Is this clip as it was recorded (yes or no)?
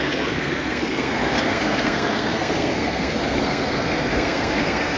no